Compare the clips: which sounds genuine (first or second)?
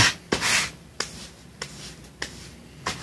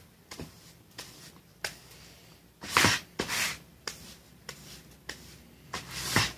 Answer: first